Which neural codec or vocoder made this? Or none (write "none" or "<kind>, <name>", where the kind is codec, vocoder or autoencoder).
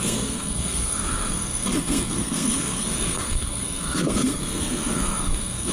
codec, SNAC